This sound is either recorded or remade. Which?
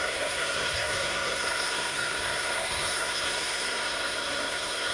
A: remade